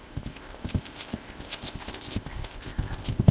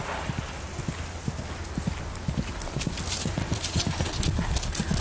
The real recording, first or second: second